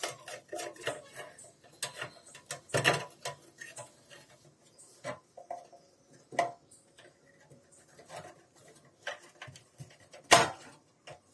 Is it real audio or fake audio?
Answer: real